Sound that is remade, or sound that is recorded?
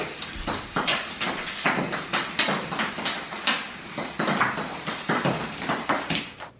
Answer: recorded